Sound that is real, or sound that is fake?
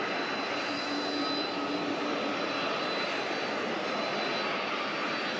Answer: fake